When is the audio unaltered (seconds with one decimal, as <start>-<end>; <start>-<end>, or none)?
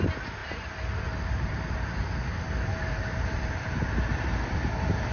0.0-0.4; 3.5-5.1